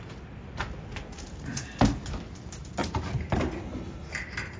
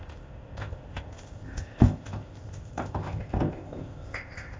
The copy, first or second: second